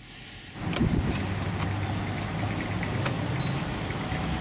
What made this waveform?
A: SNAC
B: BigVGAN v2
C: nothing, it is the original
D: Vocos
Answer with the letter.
C